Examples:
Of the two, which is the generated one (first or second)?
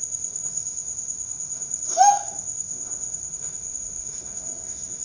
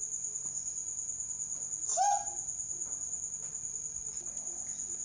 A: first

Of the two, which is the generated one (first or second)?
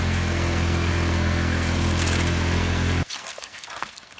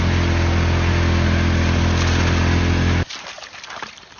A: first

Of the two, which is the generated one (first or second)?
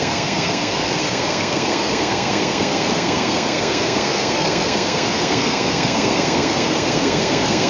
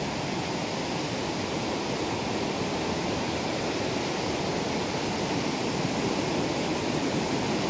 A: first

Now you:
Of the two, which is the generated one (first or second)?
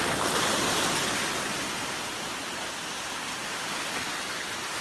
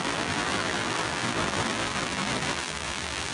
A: second